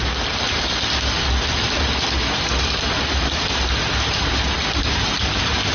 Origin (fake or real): real